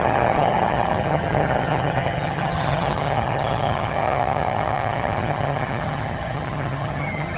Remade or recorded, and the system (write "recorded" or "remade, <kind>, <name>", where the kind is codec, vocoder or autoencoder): remade, vocoder, HiFi-GAN